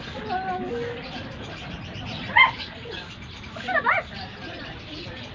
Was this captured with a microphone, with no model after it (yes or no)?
yes